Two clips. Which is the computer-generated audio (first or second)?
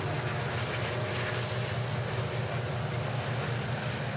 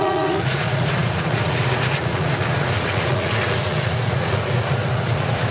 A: second